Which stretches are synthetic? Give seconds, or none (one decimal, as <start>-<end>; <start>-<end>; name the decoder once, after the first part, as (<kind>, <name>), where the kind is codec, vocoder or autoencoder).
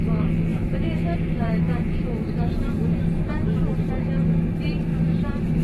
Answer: 0.5-3.9 (vocoder, BigVGAN v2); 4.9-5.6